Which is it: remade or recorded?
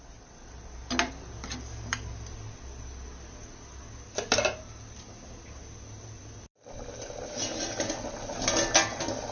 recorded